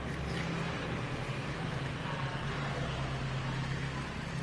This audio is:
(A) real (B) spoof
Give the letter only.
A